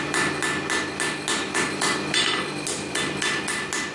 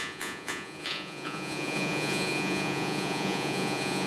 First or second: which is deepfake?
second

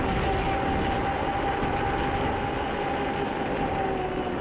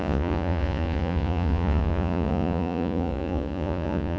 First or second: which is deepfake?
second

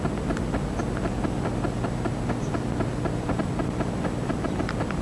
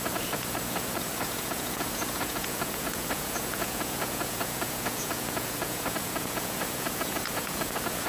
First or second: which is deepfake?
second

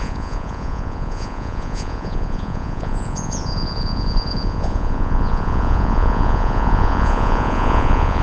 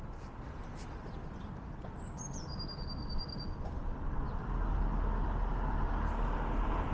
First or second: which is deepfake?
first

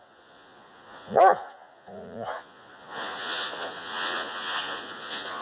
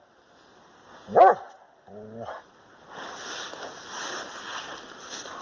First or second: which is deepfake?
first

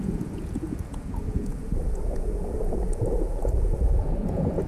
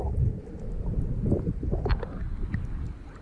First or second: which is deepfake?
first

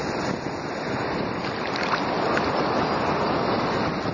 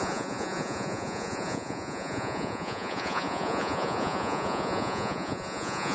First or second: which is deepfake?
second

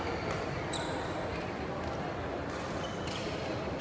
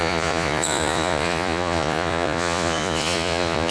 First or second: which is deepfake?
second